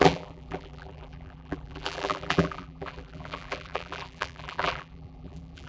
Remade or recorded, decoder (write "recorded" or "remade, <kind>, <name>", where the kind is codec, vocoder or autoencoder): remade, vocoder, BigVGAN v2